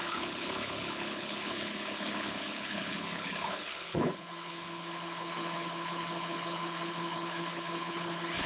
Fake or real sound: fake